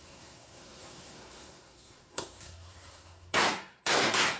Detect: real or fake fake